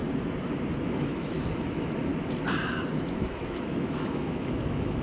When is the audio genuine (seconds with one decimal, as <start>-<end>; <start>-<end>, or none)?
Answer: 0.0-0.8; 2.1-3.0